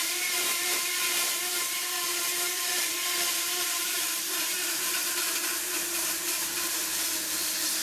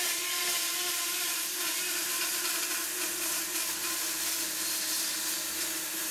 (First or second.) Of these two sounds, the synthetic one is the first